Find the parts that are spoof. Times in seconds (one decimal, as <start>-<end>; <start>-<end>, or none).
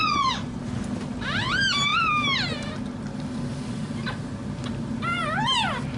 0.0-0.6